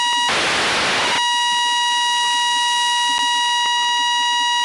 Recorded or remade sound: recorded